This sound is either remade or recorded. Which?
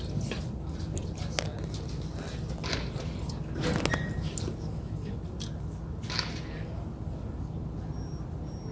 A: recorded